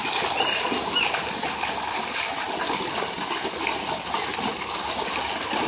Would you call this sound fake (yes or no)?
no